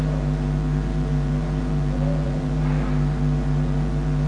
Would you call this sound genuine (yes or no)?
no